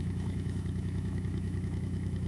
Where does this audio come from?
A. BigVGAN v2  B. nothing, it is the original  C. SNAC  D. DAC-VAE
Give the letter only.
D